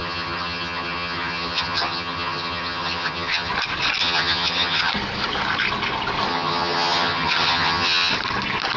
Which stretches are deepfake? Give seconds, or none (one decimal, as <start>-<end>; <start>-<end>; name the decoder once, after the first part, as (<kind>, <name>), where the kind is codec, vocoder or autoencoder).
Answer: 0.0-3.5 (vocoder, HiFi-GAN); 4.0-4.9; 6.3-8.1